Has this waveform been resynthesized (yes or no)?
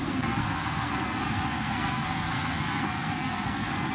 yes